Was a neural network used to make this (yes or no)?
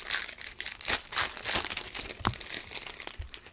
no